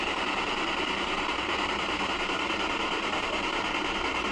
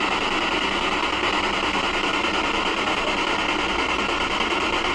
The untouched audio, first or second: second